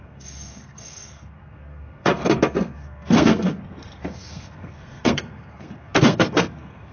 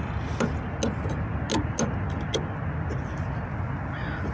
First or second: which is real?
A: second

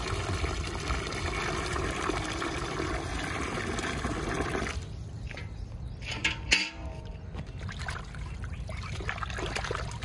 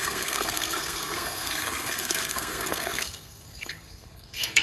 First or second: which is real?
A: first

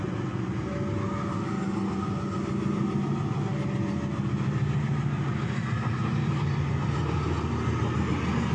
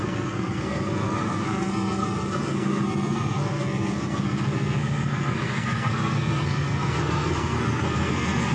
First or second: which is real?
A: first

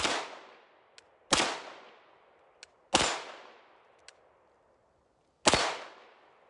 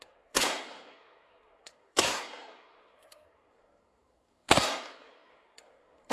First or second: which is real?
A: first